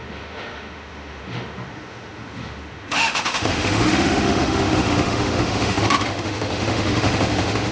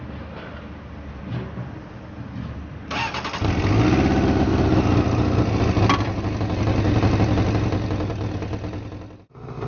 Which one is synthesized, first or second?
first